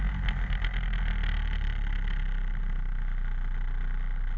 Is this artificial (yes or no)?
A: no